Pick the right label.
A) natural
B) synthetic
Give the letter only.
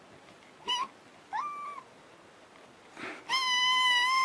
A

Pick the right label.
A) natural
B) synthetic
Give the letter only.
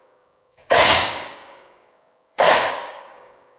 B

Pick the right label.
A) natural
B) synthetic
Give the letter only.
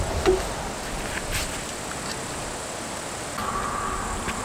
A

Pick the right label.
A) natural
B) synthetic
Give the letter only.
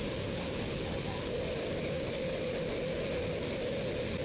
A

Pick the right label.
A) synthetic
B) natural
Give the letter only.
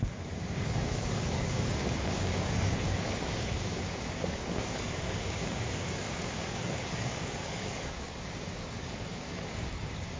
A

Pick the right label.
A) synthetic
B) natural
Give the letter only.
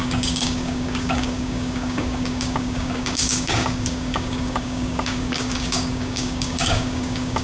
A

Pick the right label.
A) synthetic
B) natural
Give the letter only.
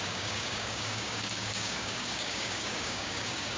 A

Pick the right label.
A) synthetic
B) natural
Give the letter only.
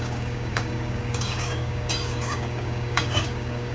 A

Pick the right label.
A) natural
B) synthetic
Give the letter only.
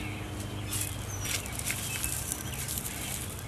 A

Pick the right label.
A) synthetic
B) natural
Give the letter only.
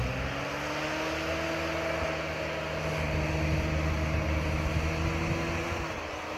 B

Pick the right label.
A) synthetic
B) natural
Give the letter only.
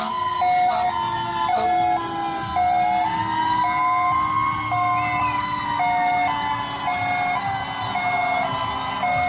B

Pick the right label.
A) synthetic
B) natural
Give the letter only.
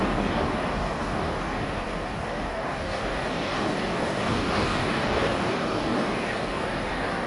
A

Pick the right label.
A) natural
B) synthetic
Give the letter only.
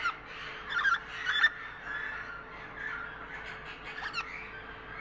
A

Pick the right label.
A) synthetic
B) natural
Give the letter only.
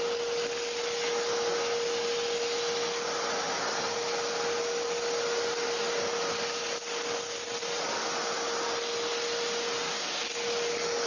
B